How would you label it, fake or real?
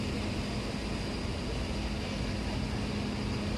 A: real